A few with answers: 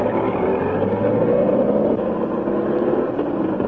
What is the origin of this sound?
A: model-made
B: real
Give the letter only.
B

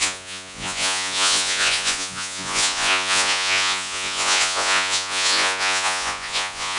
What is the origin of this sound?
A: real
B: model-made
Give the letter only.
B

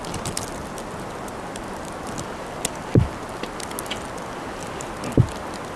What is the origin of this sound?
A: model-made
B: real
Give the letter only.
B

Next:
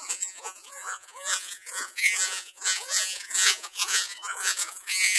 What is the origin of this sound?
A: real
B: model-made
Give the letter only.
B